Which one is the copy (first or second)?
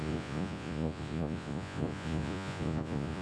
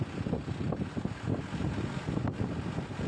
first